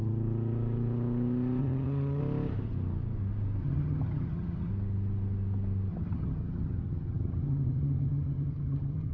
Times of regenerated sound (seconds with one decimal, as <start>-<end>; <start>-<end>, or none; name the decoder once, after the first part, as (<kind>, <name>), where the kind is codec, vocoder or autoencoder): 1.6-2.2 (vocoder, HiFi-GAN); 3.6-4.7; 5.9-9.1